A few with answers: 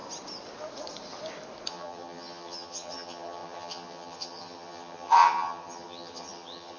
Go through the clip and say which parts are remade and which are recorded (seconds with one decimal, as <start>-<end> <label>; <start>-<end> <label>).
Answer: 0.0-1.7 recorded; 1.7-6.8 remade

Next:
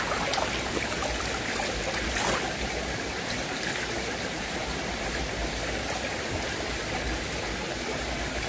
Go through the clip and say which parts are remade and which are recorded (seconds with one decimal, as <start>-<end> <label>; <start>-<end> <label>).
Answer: 0.0-8.5 recorded

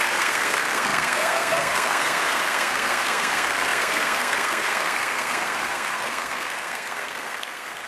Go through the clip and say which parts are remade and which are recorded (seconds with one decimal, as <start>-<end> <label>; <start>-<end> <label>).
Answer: 0.0-7.9 remade

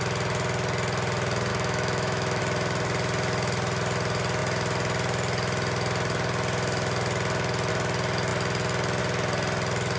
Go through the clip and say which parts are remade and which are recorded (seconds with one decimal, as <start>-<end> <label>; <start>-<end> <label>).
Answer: 0.0-1.5 recorded; 1.5-2.4 remade; 2.4-10.0 recorded

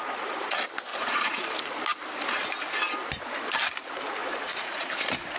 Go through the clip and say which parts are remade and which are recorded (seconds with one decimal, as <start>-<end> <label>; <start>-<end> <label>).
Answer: 0.0-0.9 recorded; 0.9-1.4 remade; 1.4-4.2 recorded; 4.2-4.9 remade; 4.9-5.4 recorded

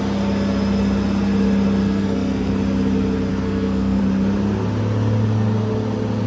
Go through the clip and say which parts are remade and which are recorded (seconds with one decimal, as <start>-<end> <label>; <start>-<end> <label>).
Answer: 0.0-1.8 recorded; 1.8-2.5 remade; 2.5-3.3 recorded; 3.3-4.0 remade; 4.0-6.3 recorded